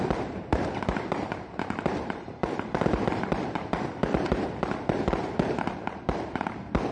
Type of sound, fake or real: fake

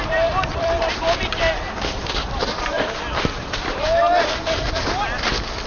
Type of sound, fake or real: fake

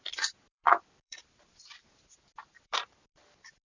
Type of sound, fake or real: fake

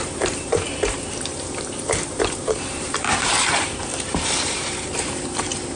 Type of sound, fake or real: fake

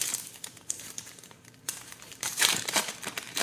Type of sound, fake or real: fake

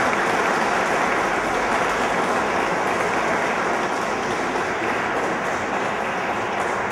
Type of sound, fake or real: real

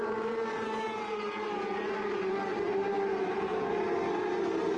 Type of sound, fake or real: fake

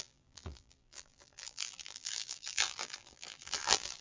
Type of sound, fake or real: fake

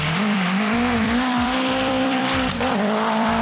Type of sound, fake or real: fake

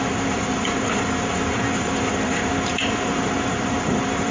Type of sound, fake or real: fake